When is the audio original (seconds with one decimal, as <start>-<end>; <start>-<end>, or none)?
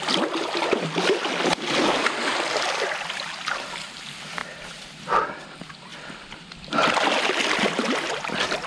0.0-8.7